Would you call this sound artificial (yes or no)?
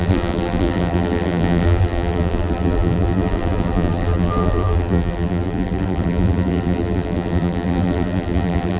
yes